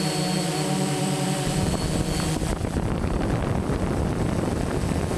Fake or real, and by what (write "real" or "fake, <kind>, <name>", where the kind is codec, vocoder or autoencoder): fake, vocoder, BigVGAN v2